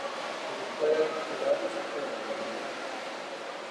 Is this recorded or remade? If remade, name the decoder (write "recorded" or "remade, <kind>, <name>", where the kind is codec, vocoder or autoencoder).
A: recorded